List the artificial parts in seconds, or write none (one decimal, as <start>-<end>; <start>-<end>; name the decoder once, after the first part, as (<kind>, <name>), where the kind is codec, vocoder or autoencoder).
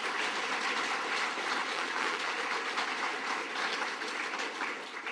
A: 1.6-2.4 (vocoder, Vocos)